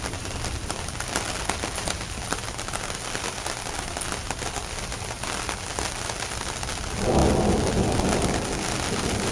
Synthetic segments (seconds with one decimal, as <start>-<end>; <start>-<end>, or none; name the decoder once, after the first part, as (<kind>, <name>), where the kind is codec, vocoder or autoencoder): none